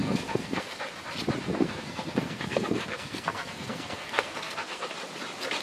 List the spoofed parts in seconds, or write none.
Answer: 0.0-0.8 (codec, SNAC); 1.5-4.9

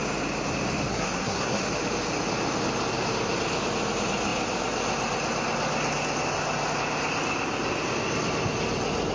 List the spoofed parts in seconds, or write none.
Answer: 0.9-1.6 (codec, SNAC)

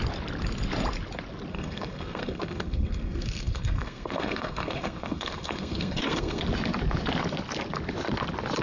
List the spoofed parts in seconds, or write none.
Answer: 1.5-6.4 (codec, SNAC)

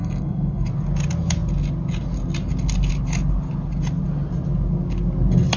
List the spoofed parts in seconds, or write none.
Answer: 0.0-0.7 (codec, SNAC)

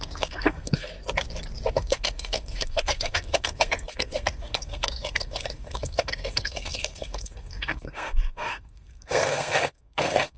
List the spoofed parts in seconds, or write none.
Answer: 0.0-0.9 (codec, SNAC); 1.7-10.4

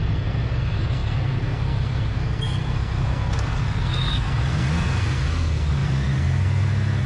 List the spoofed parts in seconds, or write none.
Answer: 0.0-7.1 (codec, SNAC)

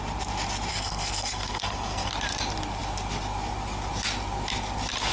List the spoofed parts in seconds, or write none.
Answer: 0.7-2.1 (codec, SNAC)

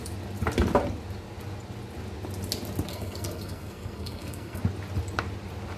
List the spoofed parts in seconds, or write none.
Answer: 2.9-4.6 (codec, SNAC)